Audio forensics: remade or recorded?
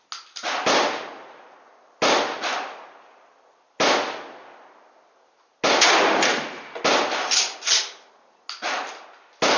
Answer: recorded